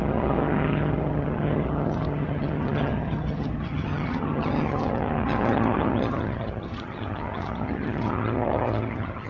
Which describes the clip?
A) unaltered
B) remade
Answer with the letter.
B